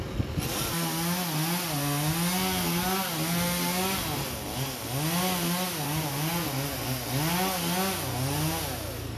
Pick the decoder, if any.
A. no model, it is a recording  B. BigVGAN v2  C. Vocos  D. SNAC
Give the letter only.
A